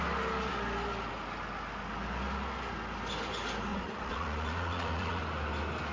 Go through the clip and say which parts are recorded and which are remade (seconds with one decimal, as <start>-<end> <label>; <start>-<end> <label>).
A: 0.0-3.7 recorded; 3.7-5.2 remade; 5.2-5.9 recorded